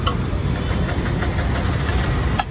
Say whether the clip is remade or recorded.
recorded